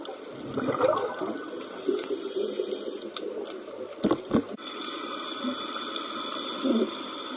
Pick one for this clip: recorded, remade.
recorded